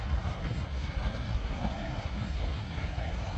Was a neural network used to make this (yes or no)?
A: yes